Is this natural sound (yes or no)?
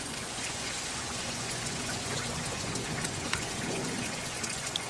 no